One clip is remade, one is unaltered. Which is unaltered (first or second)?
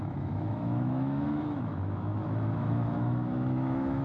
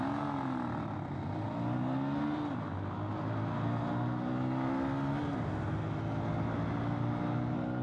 second